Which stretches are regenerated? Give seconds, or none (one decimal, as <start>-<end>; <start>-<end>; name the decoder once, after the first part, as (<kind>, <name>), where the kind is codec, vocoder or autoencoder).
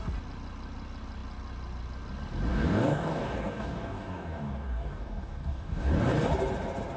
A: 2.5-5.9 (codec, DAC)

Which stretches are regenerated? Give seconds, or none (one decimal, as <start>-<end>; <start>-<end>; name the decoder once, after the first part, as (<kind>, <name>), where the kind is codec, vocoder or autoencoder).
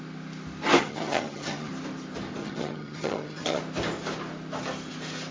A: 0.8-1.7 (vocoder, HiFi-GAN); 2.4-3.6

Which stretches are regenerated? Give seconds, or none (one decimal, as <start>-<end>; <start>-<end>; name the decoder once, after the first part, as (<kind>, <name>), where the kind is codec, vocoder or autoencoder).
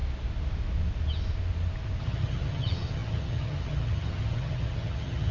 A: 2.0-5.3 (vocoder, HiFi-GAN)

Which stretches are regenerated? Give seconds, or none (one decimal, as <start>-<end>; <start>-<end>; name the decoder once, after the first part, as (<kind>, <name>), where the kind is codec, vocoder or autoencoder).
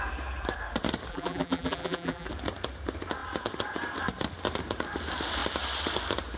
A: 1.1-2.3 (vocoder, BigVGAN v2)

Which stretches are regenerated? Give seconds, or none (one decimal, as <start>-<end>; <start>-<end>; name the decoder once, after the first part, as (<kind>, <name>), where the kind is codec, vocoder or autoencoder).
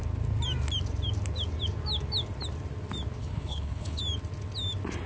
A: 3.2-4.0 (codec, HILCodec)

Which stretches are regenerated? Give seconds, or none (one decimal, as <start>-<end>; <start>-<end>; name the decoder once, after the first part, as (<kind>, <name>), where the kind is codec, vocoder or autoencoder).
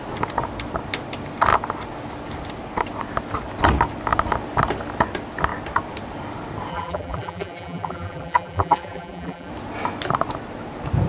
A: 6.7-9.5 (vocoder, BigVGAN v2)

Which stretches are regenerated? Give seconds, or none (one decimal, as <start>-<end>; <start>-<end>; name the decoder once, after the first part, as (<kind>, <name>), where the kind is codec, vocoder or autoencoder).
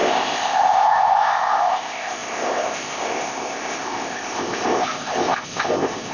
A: 0.0-6.1 (codec, ZipCodec)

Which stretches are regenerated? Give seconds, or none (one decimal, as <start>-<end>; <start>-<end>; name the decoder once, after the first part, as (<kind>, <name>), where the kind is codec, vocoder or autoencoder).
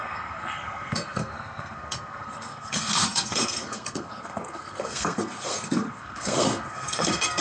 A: 0.0-7.4 (codec, SNAC)